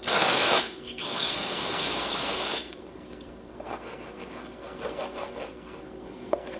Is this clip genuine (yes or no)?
no